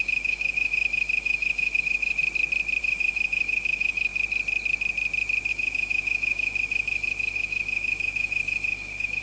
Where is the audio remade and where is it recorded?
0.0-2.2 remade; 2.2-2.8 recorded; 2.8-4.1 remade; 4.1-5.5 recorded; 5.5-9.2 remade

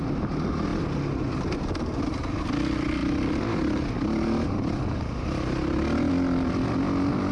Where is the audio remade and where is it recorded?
0.0-7.3 recorded

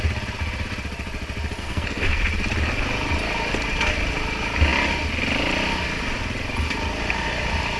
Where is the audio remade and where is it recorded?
0.0-1.6 recorded; 1.6-2.2 remade; 2.2-7.8 recorded

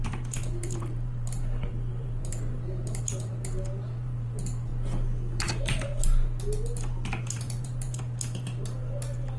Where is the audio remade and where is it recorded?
0.0-4.7 remade; 4.7-5.4 recorded; 5.4-5.9 remade; 5.9-7.2 recorded; 7.2-9.4 remade

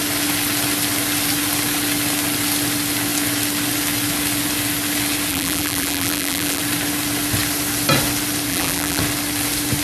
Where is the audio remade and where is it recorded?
0.0-5.3 recorded; 5.3-6.6 remade; 6.6-8.5 recorded; 8.5-9.0 remade; 9.0-9.8 recorded